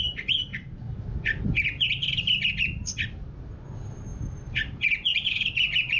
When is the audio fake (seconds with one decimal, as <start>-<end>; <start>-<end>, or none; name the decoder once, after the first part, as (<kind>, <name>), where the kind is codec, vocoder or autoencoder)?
none